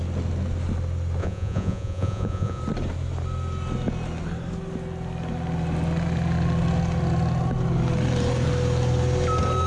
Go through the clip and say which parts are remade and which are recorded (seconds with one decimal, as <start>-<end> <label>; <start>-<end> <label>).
0.0-1.2 recorded; 1.2-2.6 remade; 2.6-9.7 recorded